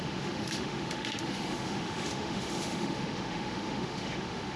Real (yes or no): no